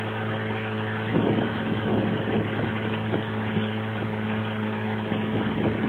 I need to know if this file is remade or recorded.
remade